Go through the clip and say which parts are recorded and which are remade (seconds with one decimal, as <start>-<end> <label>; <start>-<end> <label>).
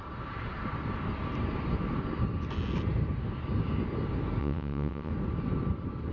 0.0-4.4 recorded; 4.4-5.1 remade; 5.1-6.1 recorded